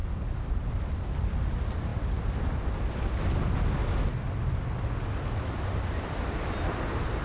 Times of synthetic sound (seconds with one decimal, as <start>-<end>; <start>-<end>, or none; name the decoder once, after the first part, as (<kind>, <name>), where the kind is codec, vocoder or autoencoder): none

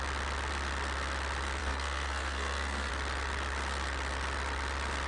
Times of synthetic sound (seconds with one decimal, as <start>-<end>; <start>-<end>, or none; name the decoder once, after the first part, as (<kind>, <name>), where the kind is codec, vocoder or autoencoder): 1.6-2.9 (codec, SNAC)

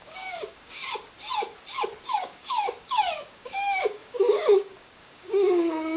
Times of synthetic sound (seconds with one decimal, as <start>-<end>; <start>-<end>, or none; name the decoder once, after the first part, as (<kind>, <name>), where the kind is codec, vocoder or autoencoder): 0.0-0.8 (codec, DAC); 2.1-6.0

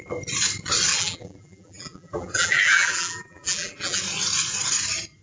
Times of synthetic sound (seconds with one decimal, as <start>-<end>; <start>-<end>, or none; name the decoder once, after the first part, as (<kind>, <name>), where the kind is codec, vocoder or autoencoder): 0.9-4.0 (vocoder, BigVGAN v2)

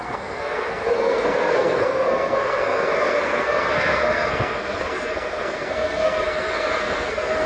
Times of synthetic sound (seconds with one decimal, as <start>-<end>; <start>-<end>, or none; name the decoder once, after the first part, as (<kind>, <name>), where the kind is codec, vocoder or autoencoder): 0.0-7.5 (codec, SNAC)